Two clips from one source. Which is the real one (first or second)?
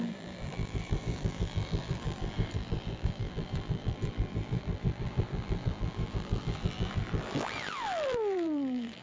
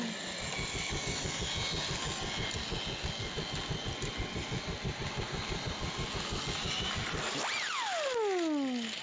second